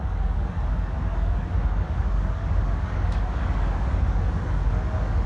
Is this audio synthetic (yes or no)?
yes